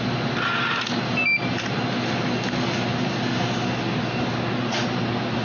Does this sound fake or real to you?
real